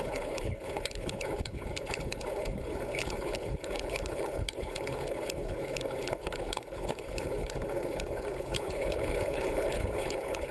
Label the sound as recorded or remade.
remade